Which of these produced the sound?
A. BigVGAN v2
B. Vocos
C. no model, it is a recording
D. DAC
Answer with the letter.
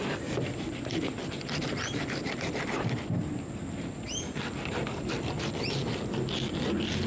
C